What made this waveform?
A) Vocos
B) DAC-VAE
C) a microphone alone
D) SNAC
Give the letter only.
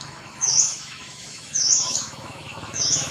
B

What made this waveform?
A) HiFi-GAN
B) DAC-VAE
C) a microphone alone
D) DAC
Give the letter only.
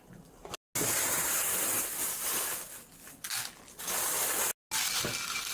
C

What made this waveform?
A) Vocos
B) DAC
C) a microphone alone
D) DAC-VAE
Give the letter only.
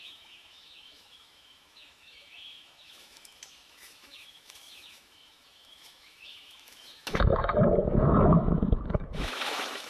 D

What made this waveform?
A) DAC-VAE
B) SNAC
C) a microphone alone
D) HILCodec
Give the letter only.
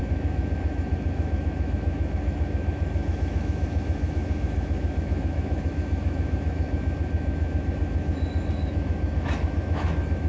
A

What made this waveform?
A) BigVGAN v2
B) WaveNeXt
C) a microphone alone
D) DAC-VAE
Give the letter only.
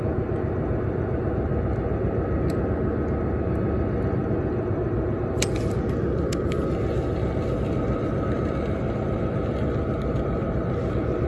C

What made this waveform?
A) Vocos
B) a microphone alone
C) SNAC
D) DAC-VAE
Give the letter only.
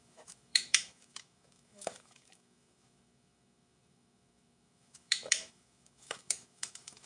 D